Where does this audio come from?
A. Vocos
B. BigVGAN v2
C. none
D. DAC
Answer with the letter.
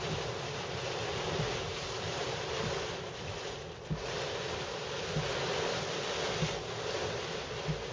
C